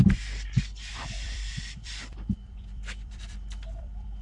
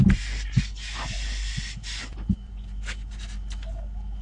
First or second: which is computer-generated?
first